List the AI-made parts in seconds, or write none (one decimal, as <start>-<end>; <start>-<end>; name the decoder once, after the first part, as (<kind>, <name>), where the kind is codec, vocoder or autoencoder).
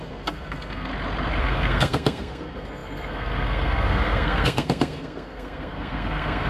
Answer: 0.0-0.9 (codec, SNAC); 1.4-6.5